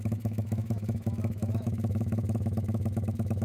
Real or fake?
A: fake